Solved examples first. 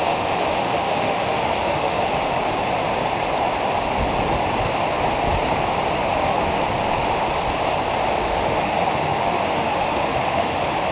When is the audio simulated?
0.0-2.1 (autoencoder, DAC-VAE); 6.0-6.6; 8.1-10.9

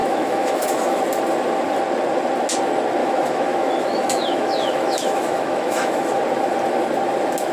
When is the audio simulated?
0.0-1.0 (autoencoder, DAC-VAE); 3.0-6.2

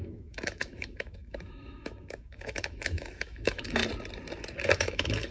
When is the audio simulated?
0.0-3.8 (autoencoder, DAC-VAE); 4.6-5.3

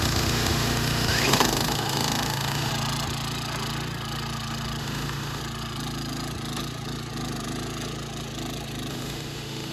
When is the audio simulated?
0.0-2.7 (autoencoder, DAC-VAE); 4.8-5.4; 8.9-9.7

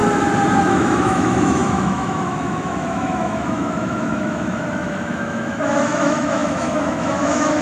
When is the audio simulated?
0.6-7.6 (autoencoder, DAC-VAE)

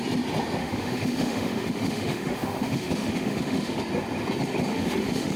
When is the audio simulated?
0.6-3.8 (autoencoder, DAC-VAE); 4.7-5.4

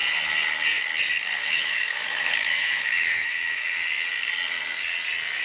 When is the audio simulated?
1.4-3.7 (autoencoder, DAC-VAE)

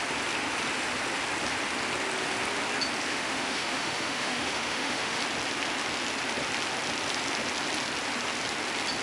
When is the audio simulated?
3.1-5.2 (autoencoder, DAC-VAE)